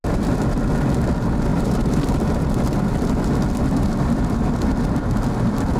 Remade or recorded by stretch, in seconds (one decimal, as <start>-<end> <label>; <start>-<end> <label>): 0.0-1.5 recorded; 1.5-4.5 remade; 4.5-5.8 recorded

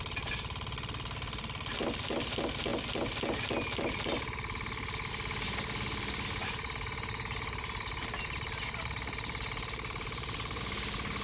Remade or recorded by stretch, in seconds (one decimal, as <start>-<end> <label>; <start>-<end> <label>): 0.0-6.4 recorded; 6.4-10.6 remade; 10.6-11.2 recorded

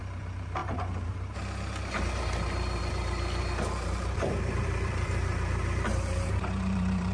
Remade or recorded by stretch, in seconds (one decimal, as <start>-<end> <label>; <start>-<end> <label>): 0.0-7.1 remade

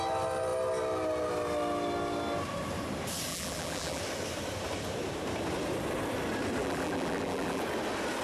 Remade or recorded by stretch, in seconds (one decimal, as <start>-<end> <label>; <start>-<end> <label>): 0.0-3.3 recorded; 3.3-4.0 remade; 4.0-6.6 recorded; 6.6-7.6 remade; 7.6-8.2 recorded

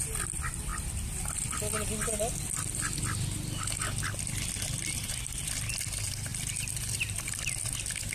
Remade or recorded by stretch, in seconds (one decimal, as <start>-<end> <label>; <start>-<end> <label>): 0.0-8.1 recorded